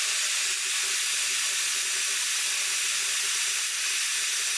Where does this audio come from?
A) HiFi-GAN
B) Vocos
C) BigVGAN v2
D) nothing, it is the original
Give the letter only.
D